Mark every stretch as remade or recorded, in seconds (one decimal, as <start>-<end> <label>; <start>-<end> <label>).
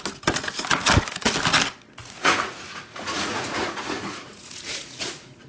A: 0.0-2.0 recorded; 2.0-5.5 remade